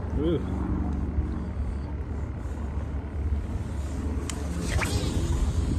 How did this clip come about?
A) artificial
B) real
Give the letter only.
B